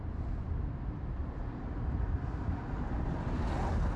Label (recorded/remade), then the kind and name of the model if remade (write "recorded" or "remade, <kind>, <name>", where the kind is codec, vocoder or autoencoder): recorded